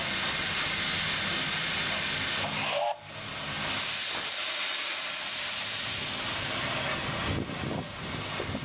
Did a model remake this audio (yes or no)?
no